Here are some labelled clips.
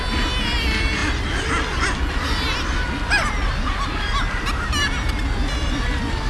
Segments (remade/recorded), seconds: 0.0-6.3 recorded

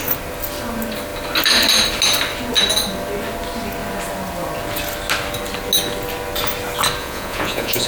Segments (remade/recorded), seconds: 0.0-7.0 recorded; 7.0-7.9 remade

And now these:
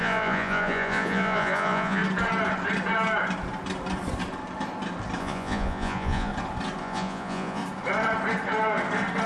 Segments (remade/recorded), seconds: 0.0-2.0 remade; 2.0-5.2 recorded; 5.2-6.3 remade; 6.3-6.8 recorded; 6.8-7.6 remade; 7.6-9.3 recorded

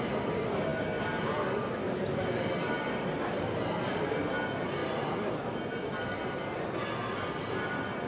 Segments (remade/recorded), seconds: 0.0-8.1 recorded